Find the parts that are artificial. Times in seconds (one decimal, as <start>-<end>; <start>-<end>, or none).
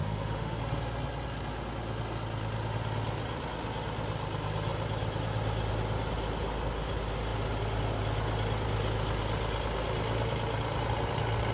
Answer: 0.0-0.6